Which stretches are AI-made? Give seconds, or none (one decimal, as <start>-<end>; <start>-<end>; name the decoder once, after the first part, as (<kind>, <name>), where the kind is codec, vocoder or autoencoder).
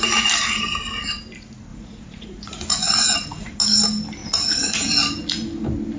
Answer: 1.7-3.6 (vocoder, Vocos); 4.2-4.9